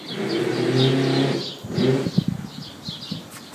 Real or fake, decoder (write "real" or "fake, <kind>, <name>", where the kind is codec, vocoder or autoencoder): real